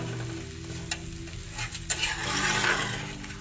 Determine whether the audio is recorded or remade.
recorded